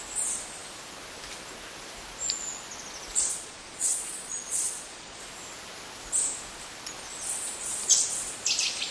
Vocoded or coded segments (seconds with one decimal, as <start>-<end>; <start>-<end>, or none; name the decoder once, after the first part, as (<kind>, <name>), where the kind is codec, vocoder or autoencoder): 3.3-5.2 (vocoder, Vocos)